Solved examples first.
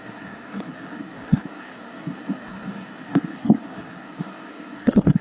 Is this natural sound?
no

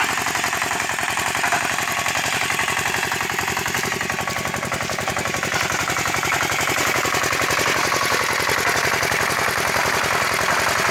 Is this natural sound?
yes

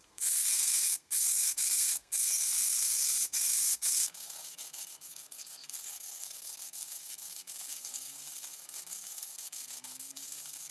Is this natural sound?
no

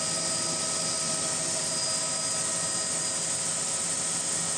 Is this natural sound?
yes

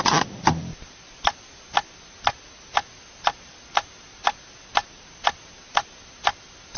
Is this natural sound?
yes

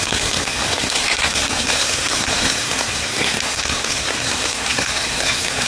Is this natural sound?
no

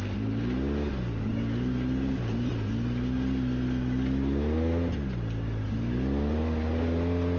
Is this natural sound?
yes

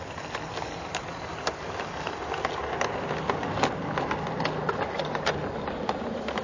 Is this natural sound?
yes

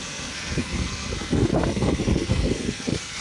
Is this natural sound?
no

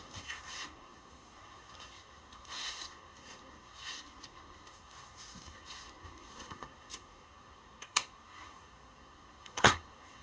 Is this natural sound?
no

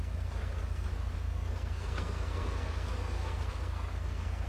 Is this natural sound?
no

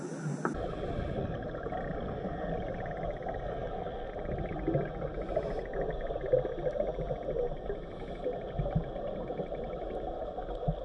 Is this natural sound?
yes